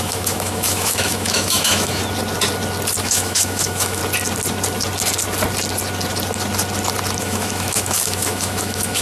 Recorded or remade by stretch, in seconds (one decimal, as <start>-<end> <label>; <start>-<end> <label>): 0.0-2.0 remade; 2.0-3.0 recorded; 3.0-4.0 remade; 4.0-7.2 recorded; 7.2-9.0 remade